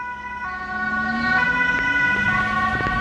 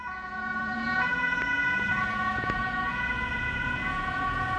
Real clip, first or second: first